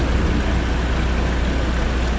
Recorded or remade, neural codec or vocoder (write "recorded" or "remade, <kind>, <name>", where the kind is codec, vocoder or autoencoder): recorded